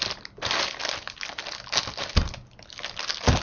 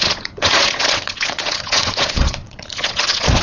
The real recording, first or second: first